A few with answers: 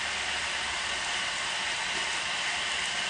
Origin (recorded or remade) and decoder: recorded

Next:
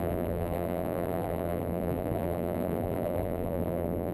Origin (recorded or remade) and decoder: remade, vocoder, BigVGAN v2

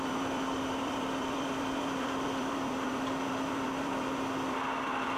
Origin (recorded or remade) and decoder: remade, vocoder, BigVGAN v2